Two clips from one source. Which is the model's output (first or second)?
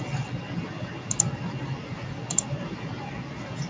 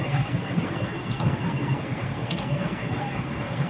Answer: second